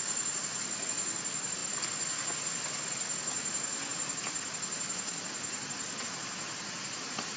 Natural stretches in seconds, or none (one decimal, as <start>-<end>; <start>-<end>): 0.0-7.4